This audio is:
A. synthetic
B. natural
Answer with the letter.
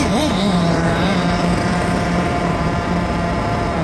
A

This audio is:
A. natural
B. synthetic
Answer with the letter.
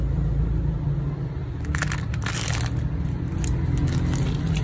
A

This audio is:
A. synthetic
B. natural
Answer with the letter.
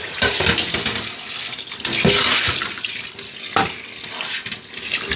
B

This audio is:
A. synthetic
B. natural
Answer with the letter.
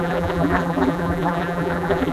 A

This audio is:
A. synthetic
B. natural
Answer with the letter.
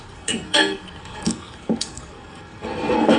A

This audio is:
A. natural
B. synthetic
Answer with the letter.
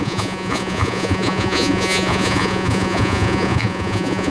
B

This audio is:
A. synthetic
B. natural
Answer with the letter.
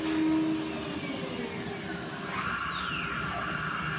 B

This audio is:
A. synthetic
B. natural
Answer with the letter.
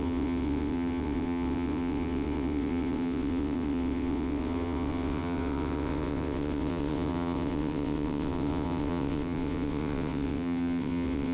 A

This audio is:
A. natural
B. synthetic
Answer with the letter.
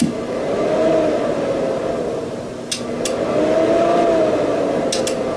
A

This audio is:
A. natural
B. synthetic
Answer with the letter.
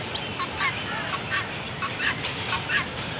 A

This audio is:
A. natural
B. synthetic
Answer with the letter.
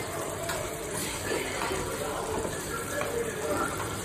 B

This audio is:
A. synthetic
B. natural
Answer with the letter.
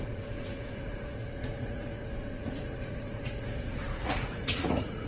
A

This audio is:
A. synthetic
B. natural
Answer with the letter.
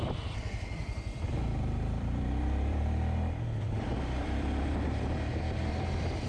A